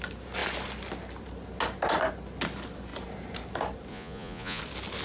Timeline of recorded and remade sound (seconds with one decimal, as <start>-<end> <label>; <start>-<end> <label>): 0.0-3.9 recorded; 3.9-4.6 remade; 4.6-5.0 recorded